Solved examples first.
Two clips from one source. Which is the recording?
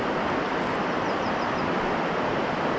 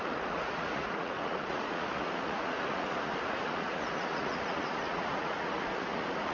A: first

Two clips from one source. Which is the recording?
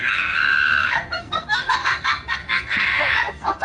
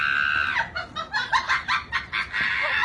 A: second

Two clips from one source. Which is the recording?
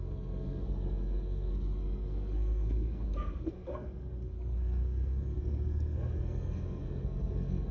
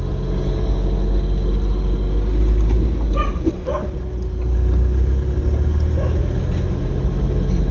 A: second